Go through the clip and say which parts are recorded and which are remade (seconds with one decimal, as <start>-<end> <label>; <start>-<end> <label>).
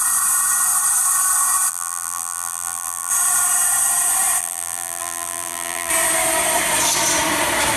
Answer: 0.0-1.7 recorded; 1.7-3.1 remade; 3.1-4.4 recorded; 4.4-5.9 remade; 5.9-7.8 recorded